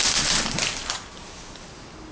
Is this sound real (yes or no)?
yes